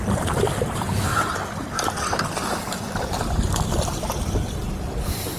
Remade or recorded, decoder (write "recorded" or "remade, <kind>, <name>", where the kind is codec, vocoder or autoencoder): recorded